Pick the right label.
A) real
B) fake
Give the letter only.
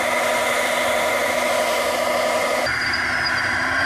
A